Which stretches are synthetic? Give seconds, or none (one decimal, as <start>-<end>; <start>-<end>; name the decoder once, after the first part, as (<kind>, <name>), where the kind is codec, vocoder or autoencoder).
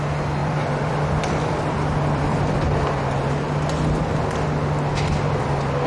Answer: 0.4-2.5 (vocoder, BigVGAN v2)